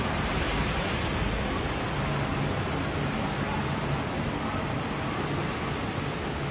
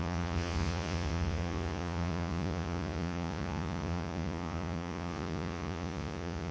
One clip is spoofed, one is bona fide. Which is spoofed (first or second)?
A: second